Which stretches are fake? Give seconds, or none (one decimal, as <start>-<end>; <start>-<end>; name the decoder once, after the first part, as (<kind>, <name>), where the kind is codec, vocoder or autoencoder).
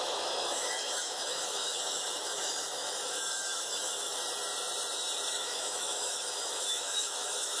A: 0.0-4.2 (autoencoder, DAC-VAE); 5.3-7.6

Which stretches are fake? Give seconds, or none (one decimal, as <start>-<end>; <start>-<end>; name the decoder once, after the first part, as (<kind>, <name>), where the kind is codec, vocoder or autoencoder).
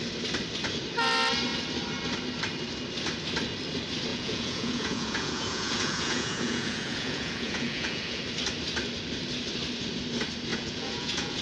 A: 4.1-8.2 (vocoder, Vocos); 10.5-11.4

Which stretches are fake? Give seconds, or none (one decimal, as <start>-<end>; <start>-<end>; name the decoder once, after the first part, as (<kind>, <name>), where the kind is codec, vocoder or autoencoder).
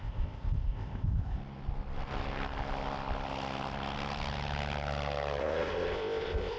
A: 0.0-1.4 (codec, ZipCodec); 5.4-6.6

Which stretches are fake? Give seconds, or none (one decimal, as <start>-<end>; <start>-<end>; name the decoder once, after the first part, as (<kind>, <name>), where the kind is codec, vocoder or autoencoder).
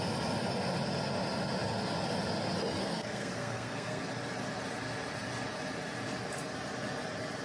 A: 2.8-4.0 (codec, SNAC)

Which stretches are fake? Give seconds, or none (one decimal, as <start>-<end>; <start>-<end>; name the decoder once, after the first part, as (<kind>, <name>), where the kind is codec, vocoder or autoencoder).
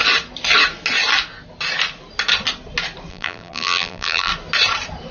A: 3.1-4.3 (vocoder, BigVGAN v2)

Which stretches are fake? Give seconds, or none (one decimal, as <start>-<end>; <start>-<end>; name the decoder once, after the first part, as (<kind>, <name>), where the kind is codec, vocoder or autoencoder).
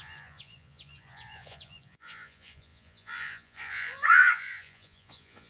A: 0.0-5.5 (vocoder, Vocos)